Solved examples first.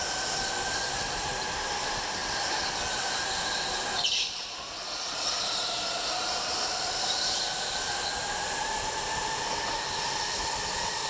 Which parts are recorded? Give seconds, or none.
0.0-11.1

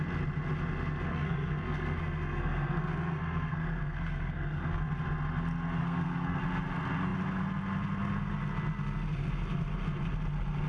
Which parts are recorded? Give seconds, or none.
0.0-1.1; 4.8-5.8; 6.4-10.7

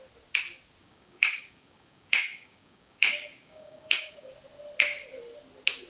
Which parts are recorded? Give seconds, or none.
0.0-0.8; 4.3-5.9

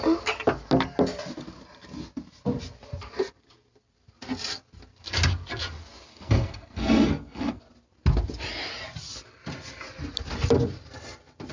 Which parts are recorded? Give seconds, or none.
0.0-6.1; 7.6-11.5

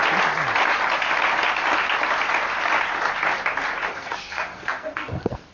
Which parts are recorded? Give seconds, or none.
0.0-3.9

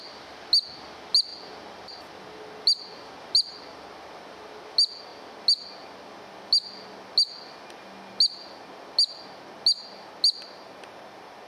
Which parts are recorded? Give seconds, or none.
0.0-11.5